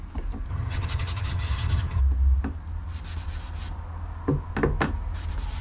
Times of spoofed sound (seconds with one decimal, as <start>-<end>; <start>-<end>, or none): 0.5-2.0

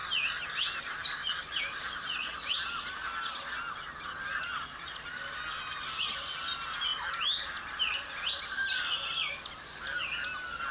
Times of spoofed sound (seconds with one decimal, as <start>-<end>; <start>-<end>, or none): none

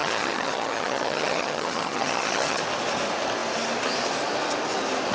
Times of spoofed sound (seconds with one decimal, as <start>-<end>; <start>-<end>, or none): 0.0-2.6

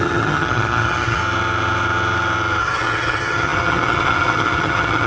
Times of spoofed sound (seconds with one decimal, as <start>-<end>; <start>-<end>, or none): 0.0-1.2; 2.6-5.1

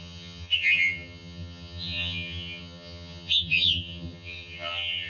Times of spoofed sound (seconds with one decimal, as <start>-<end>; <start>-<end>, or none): 0.0-5.1

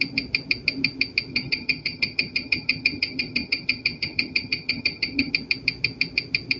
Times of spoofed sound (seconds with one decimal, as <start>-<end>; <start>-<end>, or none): 1.3-5.3

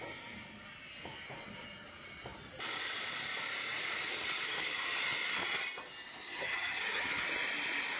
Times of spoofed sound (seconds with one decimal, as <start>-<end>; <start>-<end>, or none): 6.2-7.3

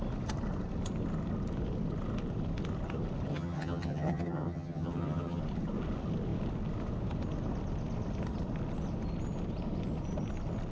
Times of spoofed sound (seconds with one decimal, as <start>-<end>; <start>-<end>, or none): 3.3-5.4